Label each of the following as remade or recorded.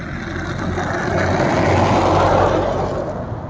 recorded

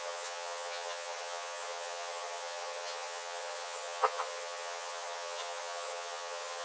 remade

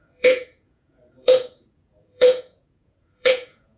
remade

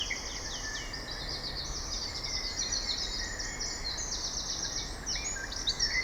recorded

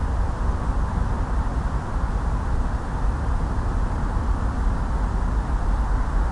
recorded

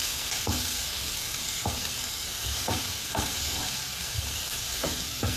remade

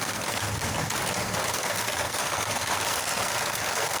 remade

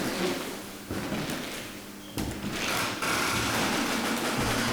recorded